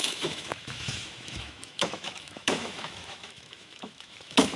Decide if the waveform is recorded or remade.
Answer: remade